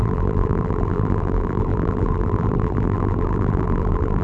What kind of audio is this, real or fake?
fake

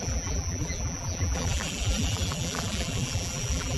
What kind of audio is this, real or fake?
fake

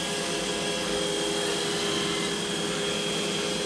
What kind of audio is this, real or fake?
real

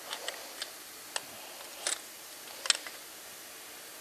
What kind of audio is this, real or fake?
real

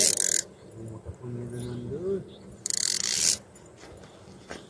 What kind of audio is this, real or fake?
real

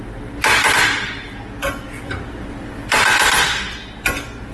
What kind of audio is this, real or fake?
real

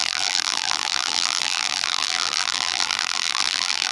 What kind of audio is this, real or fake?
fake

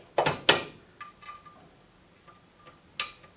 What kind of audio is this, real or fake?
real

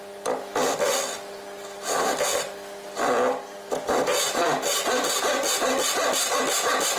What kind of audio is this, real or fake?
real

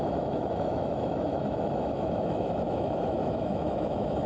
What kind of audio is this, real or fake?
fake